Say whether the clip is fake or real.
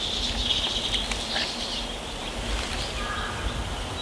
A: real